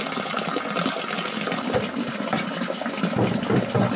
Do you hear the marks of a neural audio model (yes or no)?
no